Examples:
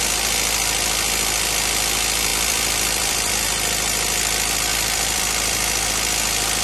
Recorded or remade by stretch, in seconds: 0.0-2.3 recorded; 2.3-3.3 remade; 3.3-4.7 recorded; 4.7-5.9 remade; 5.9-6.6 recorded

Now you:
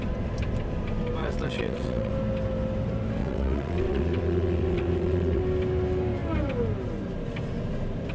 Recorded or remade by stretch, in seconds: 0.0-1.2 recorded; 1.2-2.1 remade; 2.1-3.2 recorded; 3.2-5.4 remade; 5.4-8.1 recorded

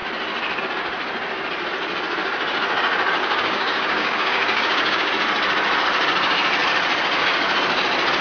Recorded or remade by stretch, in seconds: 0.0-3.2 recorded; 3.2-5.1 remade; 5.1-8.2 recorded

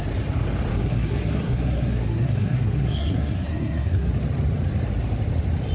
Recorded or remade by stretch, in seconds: 0.0-0.7 recorded; 0.7-4.1 remade; 4.1-5.7 recorded